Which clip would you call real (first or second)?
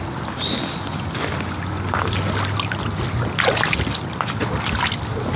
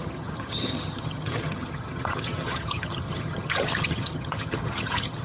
first